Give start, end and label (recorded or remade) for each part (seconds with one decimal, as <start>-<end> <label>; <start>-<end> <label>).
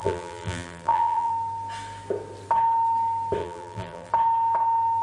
0.0-1.3 remade; 1.3-3.4 recorded; 3.4-4.1 remade; 4.1-5.0 recorded